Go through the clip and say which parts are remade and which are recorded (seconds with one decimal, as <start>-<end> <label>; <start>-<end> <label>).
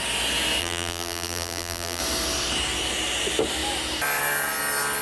0.0-0.6 recorded; 0.6-2.0 remade; 2.0-5.0 recorded